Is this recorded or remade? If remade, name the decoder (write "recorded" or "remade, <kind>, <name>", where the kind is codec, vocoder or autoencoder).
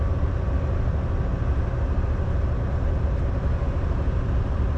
recorded